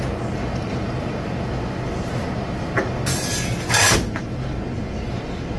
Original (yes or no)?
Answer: yes